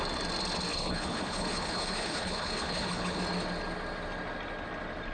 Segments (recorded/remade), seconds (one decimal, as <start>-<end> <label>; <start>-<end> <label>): 0.0-0.7 recorded; 0.7-3.2 remade; 3.2-5.1 recorded